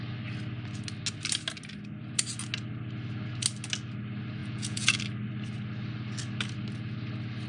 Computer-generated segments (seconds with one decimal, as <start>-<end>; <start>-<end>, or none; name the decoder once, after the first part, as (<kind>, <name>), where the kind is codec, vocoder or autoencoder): 4.4-5.0 (vocoder, Vocos)